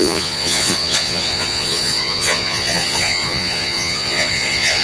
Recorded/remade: remade